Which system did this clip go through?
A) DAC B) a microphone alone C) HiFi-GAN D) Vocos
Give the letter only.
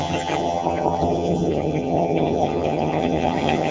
C